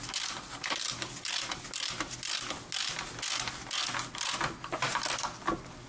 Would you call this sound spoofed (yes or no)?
no